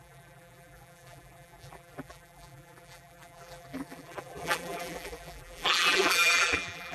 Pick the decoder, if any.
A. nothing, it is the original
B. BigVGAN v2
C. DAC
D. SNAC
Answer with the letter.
B